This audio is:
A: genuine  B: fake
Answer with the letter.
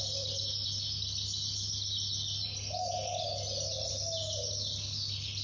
A